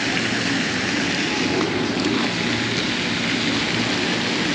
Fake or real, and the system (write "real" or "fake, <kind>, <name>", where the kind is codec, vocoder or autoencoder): real